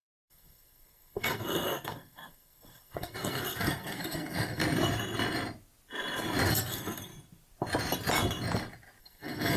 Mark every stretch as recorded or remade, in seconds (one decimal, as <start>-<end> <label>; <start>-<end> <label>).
0.0-4.6 remade; 4.6-6.5 recorded; 6.5-7.1 remade; 7.1-9.0 recorded; 9.0-9.6 remade